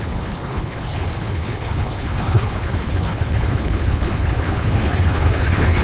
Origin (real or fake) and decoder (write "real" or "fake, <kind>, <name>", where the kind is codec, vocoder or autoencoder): fake, codec, HILCodec